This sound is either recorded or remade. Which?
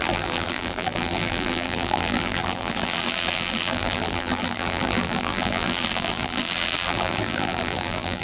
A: remade